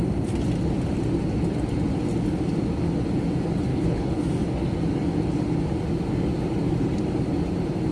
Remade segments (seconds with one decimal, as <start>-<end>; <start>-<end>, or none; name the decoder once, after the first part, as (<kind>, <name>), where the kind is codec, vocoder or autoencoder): 3.7-4.2 (codec, HILCodec)